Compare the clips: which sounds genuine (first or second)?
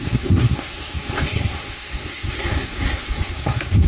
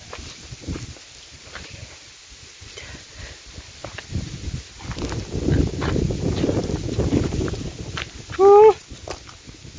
second